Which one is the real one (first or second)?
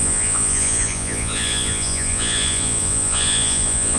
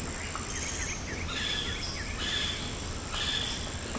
second